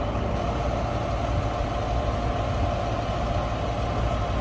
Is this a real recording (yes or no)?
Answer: yes